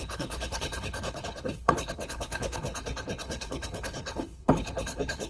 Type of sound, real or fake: fake